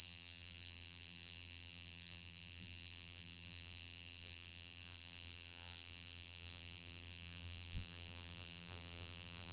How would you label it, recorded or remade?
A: remade